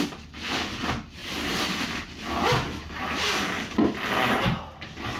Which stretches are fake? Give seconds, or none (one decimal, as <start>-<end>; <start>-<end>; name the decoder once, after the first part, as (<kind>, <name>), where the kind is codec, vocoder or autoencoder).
none